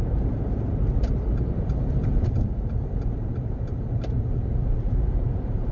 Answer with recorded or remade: remade